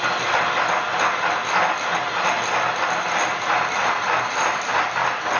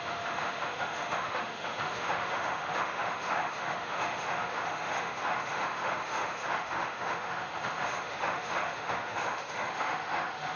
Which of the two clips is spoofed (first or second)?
second